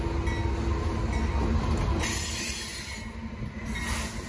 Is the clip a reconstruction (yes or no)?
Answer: no